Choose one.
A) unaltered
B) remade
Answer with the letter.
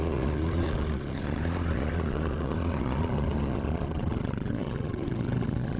B